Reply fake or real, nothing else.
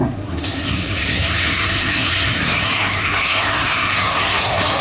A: fake